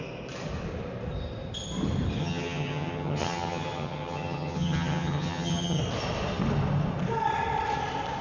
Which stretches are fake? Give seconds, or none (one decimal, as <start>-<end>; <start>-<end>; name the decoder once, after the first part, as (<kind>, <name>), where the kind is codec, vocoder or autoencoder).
2.2-5.8 (vocoder, HiFi-GAN)